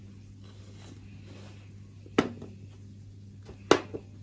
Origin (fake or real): real